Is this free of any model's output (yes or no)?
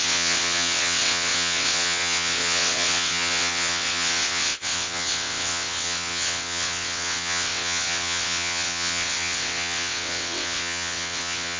no